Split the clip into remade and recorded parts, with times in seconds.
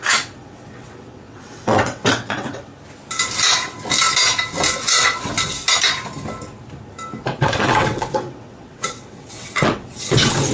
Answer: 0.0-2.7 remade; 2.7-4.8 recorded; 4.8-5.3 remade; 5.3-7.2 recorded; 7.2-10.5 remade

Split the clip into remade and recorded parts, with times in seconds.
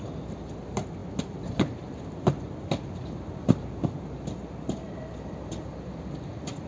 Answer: 0.0-6.7 recorded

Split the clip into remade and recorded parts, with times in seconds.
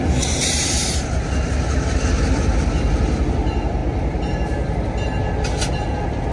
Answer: 0.0-6.3 recorded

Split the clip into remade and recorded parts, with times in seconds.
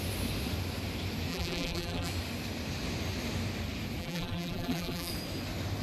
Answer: 0.0-1.3 recorded; 1.3-2.1 remade; 2.1-4.0 recorded; 4.0-5.1 remade; 5.1-5.8 recorded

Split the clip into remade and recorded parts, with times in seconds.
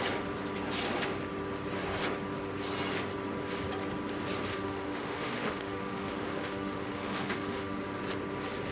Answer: 0.0-4.5 recorded; 4.5-7.8 remade; 7.8-8.7 recorded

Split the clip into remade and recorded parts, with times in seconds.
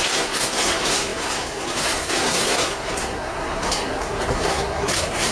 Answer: 0.0-5.3 remade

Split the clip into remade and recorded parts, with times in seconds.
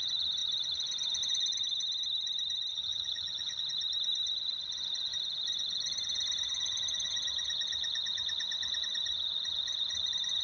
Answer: 0.0-2.7 recorded; 2.7-3.6 remade; 3.6-10.4 recorded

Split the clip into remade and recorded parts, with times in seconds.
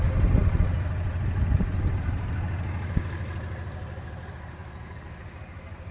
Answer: 0.0-5.9 recorded